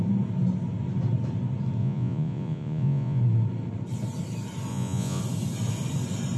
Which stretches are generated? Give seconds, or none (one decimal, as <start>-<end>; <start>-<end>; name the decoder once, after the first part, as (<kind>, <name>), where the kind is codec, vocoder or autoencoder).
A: 1.8-3.2 (vocoder, Vocos); 4.7-5.2